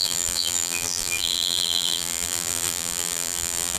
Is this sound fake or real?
fake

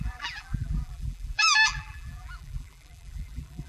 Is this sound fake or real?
fake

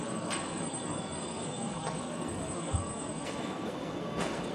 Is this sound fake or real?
fake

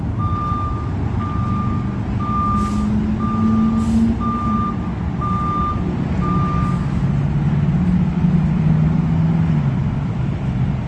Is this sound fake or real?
real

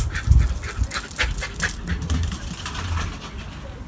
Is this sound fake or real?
real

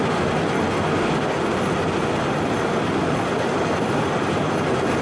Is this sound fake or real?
real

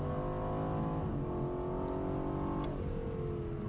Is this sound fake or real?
real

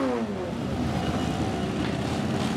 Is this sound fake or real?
real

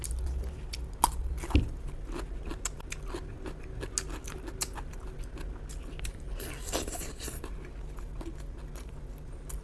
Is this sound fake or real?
real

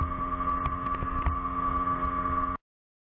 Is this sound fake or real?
real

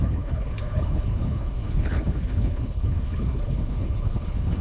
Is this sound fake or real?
fake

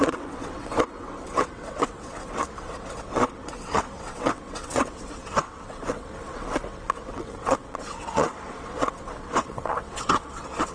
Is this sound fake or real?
fake